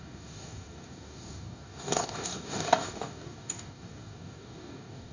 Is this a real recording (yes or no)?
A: no